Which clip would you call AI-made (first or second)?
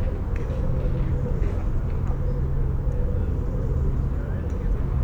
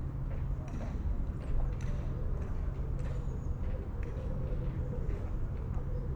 second